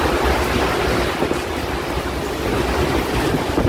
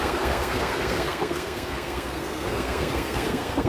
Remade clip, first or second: second